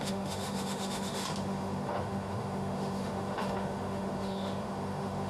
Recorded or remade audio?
remade